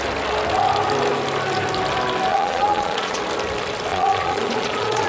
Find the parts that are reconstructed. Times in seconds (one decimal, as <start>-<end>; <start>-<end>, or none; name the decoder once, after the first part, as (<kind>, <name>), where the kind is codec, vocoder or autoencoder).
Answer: 2.3-3.2 (vocoder, Vocos); 3.9-5.1